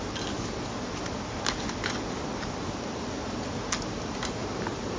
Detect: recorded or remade recorded